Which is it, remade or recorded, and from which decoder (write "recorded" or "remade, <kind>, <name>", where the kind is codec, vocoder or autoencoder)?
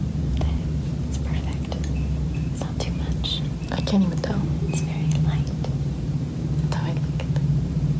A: remade, vocoder, BigVGAN v2